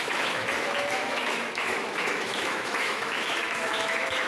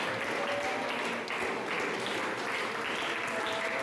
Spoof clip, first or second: first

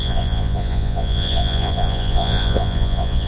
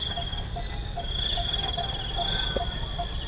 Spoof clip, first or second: first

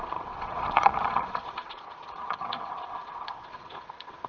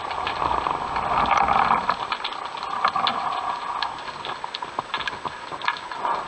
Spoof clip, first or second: first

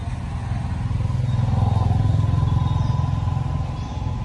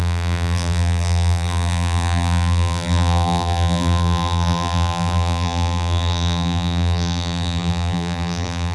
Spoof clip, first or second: second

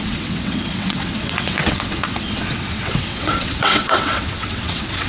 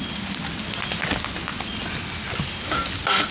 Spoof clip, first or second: first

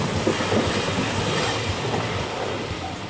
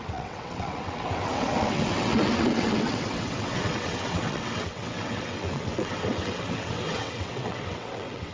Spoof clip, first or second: second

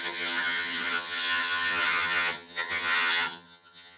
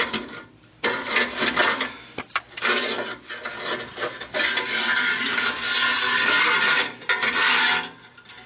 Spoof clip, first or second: first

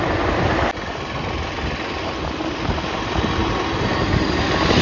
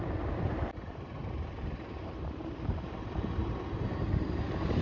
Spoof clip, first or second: second